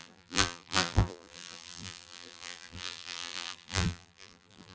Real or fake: fake